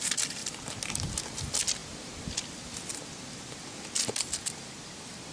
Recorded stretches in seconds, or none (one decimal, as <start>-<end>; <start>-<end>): 0.0-5.3